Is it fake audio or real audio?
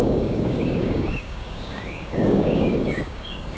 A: fake